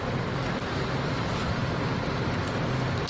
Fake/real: real